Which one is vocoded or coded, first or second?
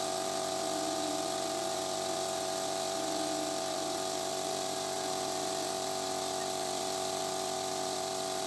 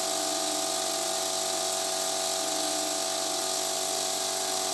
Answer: first